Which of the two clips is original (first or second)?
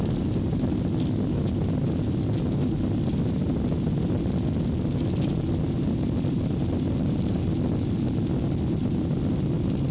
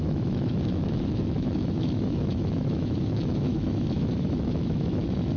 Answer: first